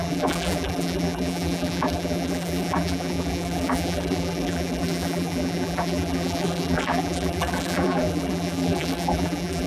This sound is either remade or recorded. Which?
remade